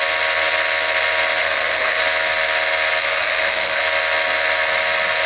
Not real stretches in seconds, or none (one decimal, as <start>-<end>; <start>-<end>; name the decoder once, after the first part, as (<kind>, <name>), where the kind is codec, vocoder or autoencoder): 1.4-2.0 (codec, SNAC); 3.0-3.8